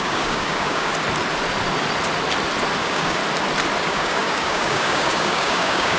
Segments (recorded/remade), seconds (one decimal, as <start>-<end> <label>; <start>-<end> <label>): 0.0-0.9 remade; 0.9-2.8 recorded; 2.8-3.2 remade; 3.2-3.8 recorded; 3.8-6.0 remade